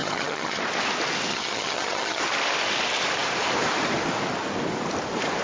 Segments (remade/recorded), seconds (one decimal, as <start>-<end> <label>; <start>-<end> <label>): 0.0-0.6 remade; 0.6-1.3 recorded; 1.3-2.2 remade; 2.2-5.4 recorded